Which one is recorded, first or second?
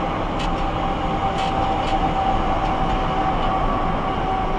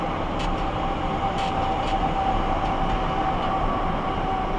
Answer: first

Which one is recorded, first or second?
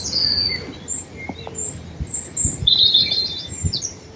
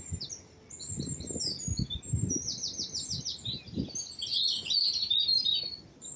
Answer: second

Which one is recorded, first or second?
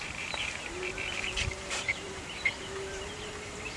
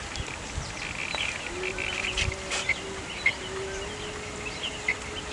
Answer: second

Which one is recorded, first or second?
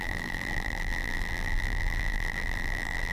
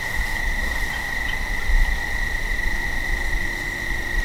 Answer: second